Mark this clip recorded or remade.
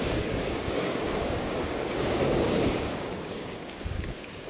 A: remade